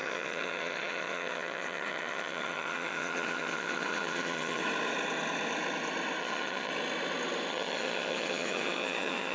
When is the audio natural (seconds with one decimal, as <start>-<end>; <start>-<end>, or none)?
4.6-6.2; 6.7-7.5